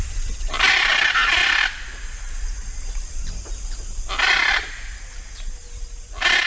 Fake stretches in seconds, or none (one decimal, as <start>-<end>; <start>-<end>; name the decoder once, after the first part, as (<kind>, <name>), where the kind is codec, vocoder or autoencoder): none